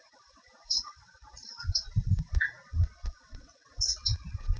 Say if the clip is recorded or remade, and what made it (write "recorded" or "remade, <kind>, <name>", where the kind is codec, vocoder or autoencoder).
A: remade, vocoder, WaveNeXt